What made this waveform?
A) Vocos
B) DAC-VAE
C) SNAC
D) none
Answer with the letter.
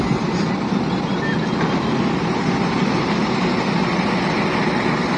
D